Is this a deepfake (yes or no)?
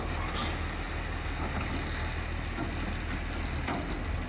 no